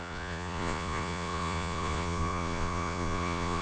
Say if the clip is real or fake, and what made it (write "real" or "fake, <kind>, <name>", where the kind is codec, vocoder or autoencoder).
fake, vocoder, Vocos